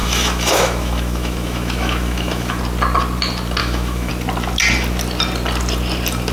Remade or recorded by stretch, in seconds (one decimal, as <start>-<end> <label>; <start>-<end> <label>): 0.0-2.6 remade; 2.6-3.6 recorded; 3.6-4.1 remade; 4.1-6.3 recorded